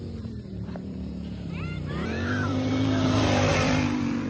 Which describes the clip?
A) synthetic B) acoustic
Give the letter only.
A